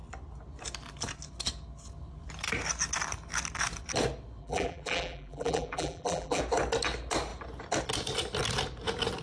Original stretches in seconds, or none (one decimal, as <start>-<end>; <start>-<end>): 0.0-4.4; 6.4-9.2